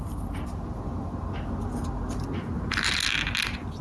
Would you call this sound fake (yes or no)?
no